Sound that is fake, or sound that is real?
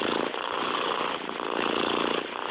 real